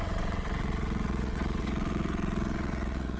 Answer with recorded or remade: remade